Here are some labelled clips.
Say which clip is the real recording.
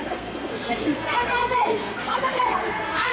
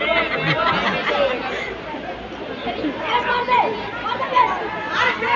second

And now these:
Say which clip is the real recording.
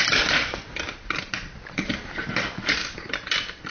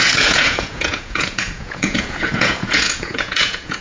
first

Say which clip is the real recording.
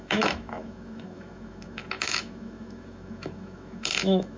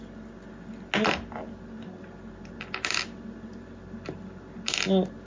second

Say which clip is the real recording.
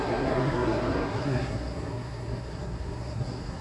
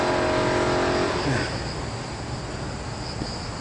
second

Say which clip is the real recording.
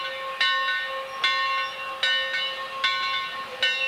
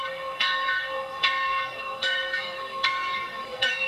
first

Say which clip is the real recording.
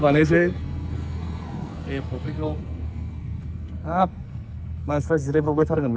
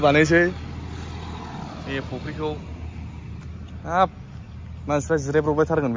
second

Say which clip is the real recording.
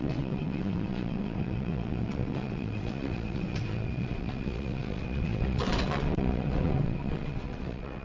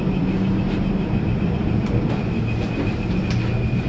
second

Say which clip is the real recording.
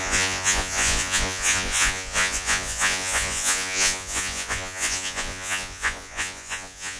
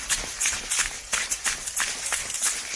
second